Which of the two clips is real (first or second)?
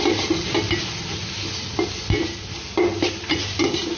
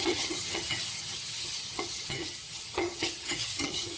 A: first